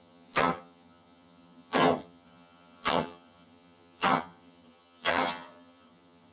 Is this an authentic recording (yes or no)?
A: no